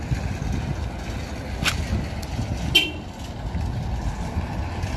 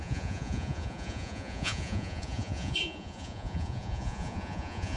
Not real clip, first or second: second